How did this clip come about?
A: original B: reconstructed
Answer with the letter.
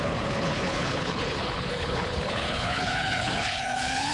B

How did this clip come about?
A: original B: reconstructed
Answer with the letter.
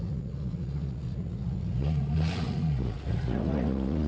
B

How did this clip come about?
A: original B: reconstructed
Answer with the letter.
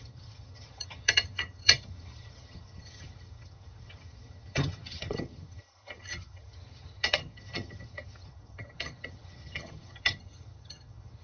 B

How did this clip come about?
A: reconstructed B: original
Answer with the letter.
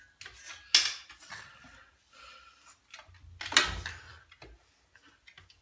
B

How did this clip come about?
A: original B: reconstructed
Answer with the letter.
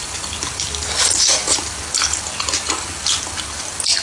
A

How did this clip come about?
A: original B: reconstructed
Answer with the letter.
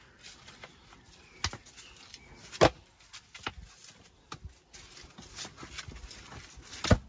A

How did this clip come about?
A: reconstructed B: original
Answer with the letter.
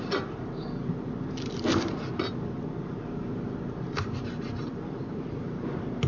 B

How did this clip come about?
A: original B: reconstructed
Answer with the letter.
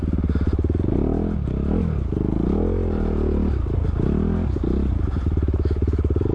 A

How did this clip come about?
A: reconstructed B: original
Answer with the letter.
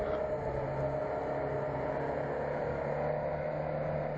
B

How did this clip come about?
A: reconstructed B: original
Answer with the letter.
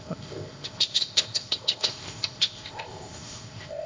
A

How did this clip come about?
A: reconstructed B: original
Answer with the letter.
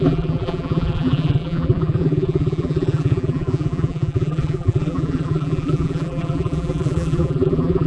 A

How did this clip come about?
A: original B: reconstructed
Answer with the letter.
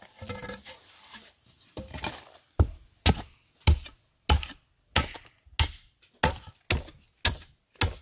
A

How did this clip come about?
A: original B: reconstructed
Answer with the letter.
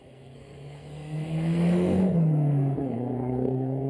B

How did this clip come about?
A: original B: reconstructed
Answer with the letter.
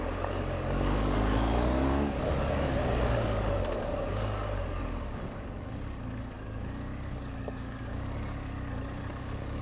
B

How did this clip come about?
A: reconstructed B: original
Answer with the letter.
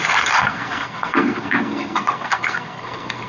A